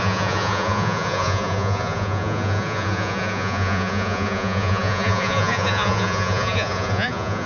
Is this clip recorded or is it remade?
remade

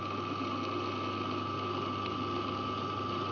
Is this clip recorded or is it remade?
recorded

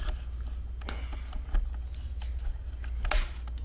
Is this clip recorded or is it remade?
recorded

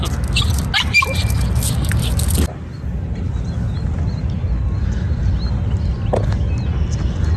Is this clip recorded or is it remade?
recorded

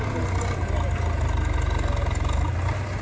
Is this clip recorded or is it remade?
recorded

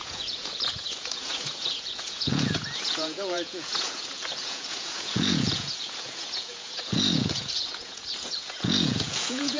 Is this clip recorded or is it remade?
remade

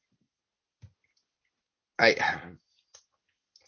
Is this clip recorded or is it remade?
recorded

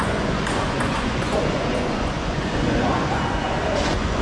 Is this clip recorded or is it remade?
remade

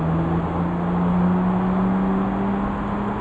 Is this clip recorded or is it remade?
recorded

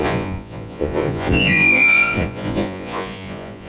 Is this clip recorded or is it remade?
remade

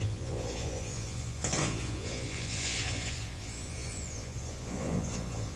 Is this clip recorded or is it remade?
remade